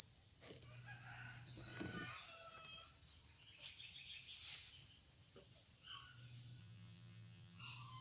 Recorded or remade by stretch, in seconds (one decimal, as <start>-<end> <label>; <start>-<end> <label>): 0.0-6.6 recorded; 6.6-7.6 remade; 7.6-8.0 recorded